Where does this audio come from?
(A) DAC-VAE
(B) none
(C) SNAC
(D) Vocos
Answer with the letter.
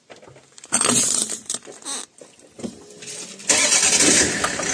B